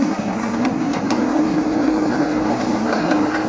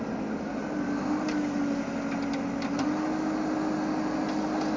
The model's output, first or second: first